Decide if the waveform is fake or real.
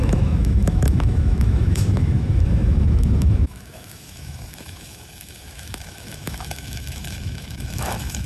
fake